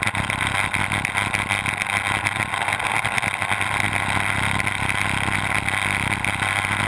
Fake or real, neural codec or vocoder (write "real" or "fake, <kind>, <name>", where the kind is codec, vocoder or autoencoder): real